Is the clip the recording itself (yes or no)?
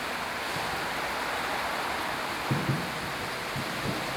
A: yes